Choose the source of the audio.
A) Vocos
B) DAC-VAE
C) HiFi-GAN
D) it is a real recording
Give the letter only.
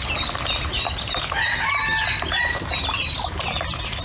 D